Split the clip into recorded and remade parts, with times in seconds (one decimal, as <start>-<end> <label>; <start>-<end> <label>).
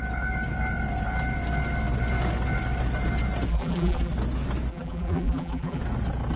0.0-3.5 recorded; 3.5-4.1 remade; 4.1-4.7 recorded; 4.7-5.8 remade; 5.8-6.4 recorded